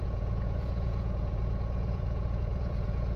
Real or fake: fake